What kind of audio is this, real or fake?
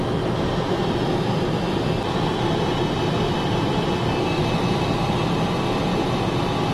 real